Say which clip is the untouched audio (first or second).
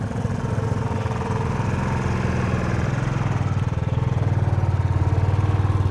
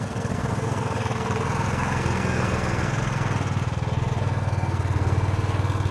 first